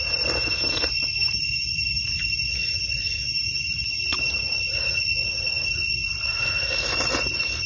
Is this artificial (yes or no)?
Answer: no